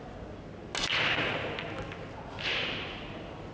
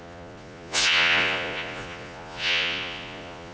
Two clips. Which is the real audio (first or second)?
first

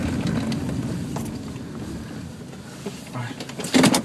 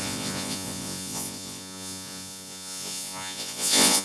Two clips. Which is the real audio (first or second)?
first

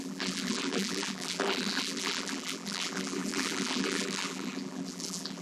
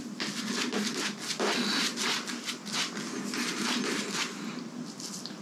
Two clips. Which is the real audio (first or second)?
second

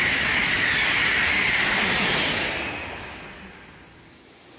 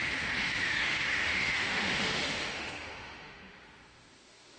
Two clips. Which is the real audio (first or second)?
first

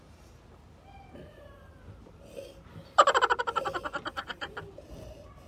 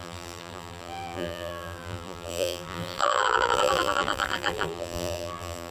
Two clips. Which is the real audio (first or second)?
first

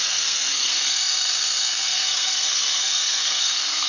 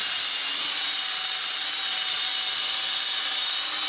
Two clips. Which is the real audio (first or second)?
second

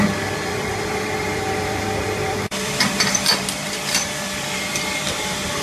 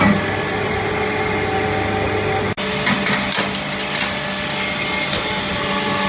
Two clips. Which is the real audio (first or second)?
second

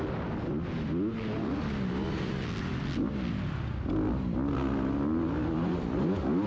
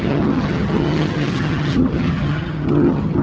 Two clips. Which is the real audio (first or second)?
first